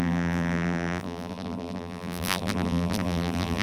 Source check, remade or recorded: remade